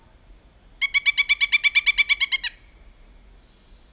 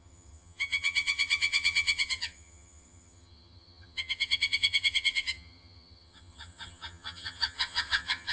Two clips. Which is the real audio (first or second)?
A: first